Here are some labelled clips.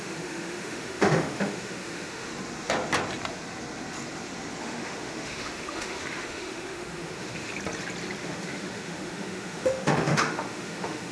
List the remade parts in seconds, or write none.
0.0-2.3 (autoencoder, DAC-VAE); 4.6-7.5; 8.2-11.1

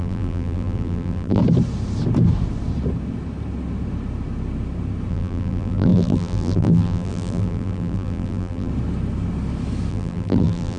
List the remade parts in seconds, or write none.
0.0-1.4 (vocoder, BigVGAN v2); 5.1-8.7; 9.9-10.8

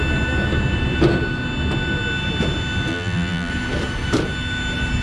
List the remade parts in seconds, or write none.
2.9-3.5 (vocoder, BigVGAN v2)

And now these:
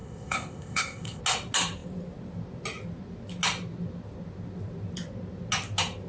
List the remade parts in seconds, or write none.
0.0-1.2 (codec, ZipCodec)